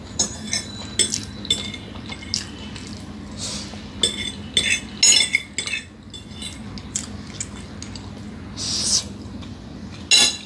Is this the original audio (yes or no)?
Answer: yes